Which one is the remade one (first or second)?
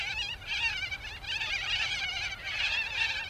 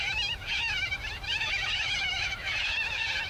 second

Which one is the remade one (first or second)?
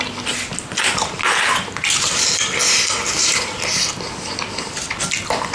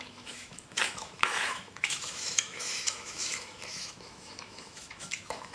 second